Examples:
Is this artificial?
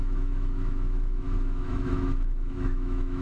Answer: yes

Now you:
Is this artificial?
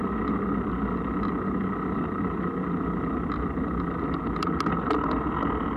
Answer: no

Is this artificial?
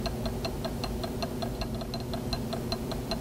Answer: no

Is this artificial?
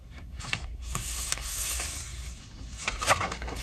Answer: yes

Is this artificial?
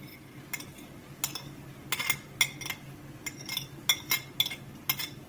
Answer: no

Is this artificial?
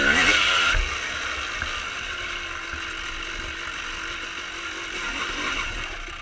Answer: no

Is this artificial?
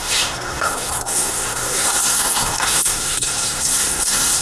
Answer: yes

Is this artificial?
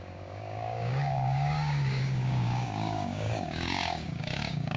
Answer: yes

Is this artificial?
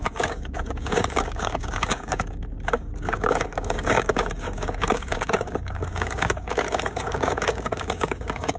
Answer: yes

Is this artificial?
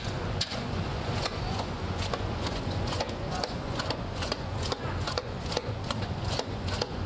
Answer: yes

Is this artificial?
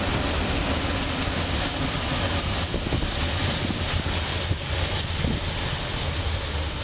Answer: no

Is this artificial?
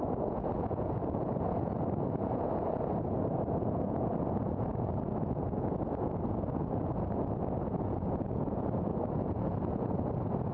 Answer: yes